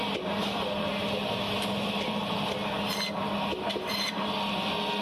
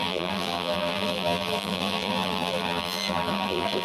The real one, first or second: first